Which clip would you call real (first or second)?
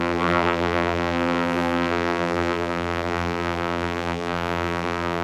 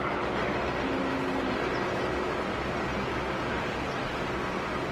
second